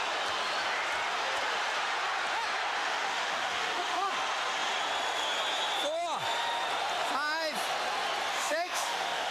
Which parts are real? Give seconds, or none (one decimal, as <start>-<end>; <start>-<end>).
0.0-2.8; 4.1-8.3